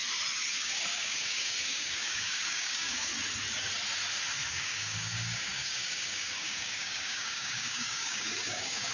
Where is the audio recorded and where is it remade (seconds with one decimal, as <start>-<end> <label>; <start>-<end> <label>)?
0.0-0.5 recorded; 0.5-3.1 remade; 3.1-4.5 recorded; 4.5-8.9 remade